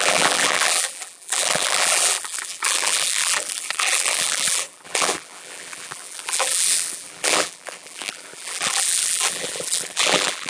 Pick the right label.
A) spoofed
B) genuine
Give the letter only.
A